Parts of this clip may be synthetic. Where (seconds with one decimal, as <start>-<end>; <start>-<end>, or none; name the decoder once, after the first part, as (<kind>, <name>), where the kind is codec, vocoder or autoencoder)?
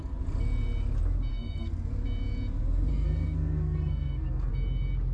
1.3-1.9 (codec, SNAC); 2.9-4.5